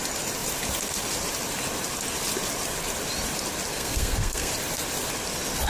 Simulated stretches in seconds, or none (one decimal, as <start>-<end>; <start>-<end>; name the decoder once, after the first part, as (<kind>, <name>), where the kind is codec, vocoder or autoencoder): 3.7-4.5 (codec, SNAC)